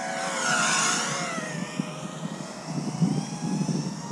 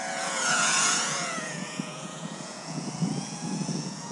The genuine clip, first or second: first